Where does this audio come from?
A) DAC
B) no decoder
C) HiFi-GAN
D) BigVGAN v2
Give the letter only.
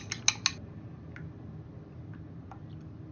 B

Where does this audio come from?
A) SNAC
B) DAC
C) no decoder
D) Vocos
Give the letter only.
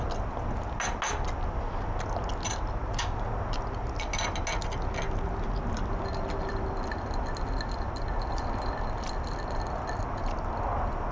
C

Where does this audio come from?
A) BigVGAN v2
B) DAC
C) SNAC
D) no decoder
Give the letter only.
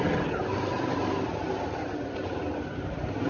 D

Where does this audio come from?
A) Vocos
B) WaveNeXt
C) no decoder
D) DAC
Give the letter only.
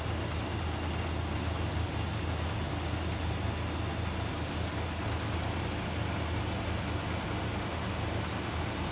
C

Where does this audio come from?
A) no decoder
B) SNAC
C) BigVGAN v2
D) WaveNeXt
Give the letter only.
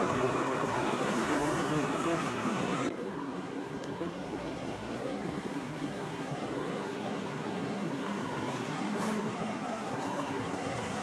B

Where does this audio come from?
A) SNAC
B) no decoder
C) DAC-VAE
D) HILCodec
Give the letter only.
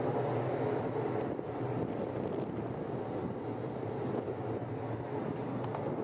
B